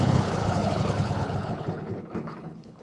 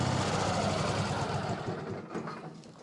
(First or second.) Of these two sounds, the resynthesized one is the first